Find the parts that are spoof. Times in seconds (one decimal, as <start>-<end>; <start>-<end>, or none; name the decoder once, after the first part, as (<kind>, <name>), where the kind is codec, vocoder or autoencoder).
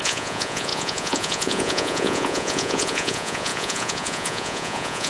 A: 0.0-5.1 (vocoder, Vocos)